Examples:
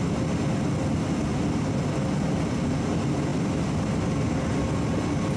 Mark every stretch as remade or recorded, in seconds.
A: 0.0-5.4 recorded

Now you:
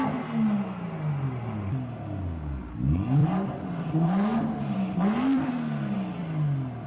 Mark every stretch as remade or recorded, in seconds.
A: 0.0-3.2 recorded; 3.2-5.5 remade; 5.5-6.9 recorded

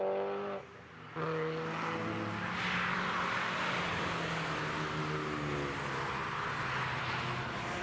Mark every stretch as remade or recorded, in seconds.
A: 0.0-7.8 recorded